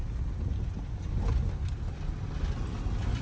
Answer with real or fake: real